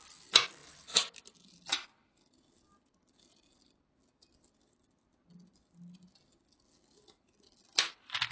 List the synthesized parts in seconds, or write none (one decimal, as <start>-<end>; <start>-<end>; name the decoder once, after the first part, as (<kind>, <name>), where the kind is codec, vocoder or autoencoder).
none